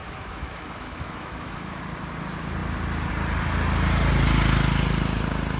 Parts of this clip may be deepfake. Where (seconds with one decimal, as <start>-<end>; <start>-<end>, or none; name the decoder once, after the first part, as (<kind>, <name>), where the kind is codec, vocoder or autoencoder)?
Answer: 0.0-1.8 (autoencoder, DAC-VAE)